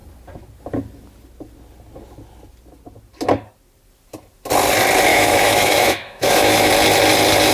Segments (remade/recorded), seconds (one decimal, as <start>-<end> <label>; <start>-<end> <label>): 0.0-5.1 recorded; 5.1-6.7 remade; 6.7-7.5 recorded